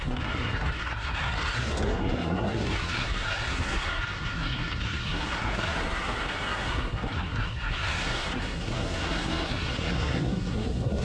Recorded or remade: remade